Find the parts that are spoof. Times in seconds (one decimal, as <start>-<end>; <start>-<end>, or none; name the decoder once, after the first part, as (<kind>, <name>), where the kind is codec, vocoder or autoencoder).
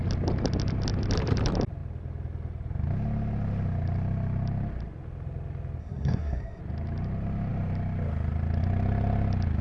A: 5.8-6.6 (codec, SNAC)